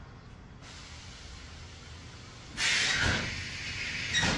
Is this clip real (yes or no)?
yes